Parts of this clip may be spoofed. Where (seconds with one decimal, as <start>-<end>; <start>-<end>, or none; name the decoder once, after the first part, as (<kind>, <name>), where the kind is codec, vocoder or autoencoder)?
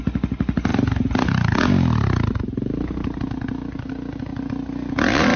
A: none